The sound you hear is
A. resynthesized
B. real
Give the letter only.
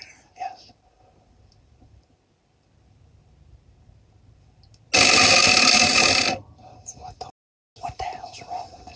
B